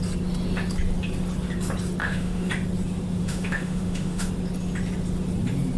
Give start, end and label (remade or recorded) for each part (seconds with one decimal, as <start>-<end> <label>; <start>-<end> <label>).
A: 0.0-2.0 recorded; 2.0-2.5 remade; 2.5-3.2 recorded; 3.2-4.3 remade; 4.3-5.8 recorded